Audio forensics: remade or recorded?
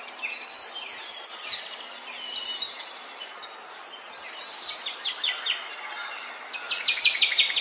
recorded